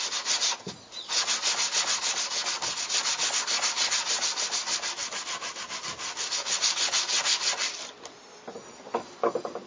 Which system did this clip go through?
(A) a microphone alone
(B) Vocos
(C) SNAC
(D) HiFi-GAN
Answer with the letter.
A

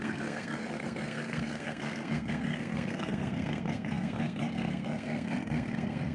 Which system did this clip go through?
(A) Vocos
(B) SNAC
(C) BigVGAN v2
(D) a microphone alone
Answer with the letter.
B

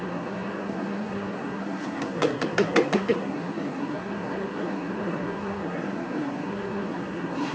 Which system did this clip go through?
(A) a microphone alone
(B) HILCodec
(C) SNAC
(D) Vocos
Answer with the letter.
C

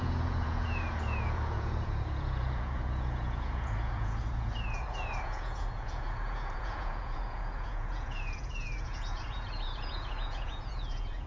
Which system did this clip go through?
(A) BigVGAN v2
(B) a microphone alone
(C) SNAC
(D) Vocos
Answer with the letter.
D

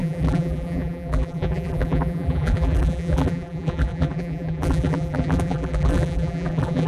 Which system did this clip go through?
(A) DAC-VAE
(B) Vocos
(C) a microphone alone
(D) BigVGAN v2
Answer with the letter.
D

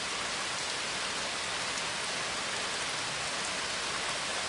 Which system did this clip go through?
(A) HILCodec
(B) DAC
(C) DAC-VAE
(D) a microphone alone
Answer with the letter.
D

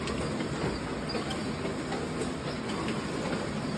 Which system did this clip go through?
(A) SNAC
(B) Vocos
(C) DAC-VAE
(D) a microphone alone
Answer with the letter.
D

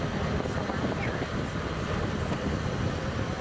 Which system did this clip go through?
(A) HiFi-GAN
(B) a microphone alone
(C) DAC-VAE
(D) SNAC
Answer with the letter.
B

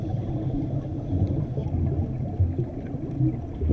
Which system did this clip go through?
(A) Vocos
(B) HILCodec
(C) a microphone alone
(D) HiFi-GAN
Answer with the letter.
C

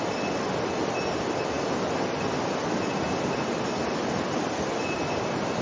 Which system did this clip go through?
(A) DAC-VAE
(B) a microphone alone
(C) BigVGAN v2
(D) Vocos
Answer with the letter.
B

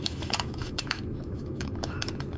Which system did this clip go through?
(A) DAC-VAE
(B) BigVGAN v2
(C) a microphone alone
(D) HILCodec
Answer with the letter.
A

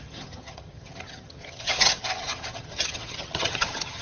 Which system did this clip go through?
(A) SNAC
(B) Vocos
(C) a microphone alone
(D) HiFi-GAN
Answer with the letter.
D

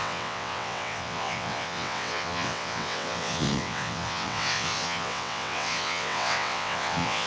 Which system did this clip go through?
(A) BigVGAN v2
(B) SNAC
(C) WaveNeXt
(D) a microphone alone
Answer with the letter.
C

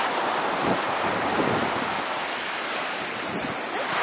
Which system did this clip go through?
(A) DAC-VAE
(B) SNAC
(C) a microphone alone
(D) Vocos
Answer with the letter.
C